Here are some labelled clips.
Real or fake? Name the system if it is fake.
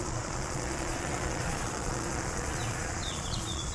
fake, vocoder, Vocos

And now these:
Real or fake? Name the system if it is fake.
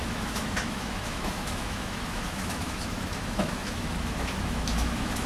fake, autoencoder, DAC-VAE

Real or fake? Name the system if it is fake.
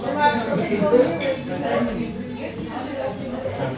real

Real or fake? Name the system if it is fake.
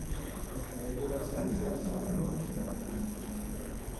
fake, codec, HILCodec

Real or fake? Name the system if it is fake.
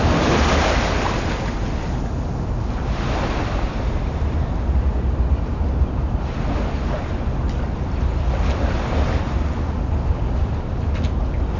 real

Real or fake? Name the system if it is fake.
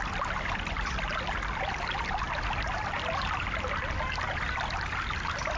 real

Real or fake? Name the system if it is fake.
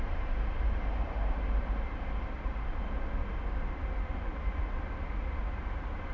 real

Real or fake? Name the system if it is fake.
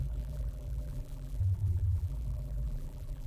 fake, vocoder, BigVGAN v2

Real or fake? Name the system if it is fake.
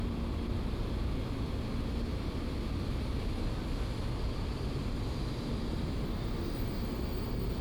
real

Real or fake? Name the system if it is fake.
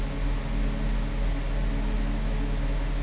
real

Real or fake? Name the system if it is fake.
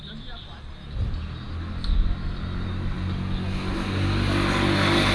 real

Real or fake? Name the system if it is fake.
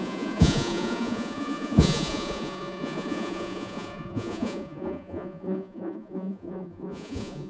fake, vocoder, Vocos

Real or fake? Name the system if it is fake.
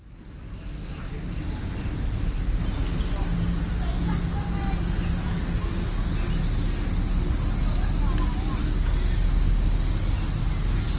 real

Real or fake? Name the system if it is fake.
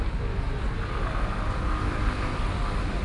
real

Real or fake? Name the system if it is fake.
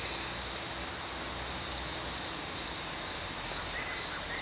real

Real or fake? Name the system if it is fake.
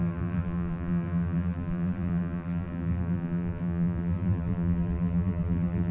fake, vocoder, BigVGAN v2